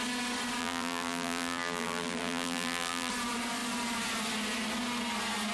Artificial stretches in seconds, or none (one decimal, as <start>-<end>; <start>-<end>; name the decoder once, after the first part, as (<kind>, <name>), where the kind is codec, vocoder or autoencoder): 0.6-3.1 (vocoder, BigVGAN v2)